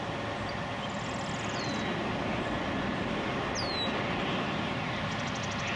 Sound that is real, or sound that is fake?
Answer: real